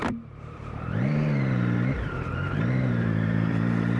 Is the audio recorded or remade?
remade